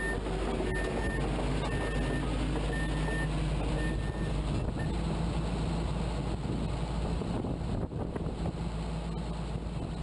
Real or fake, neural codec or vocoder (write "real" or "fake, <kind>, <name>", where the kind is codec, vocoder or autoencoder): real